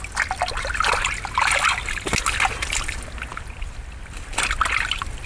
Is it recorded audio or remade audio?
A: recorded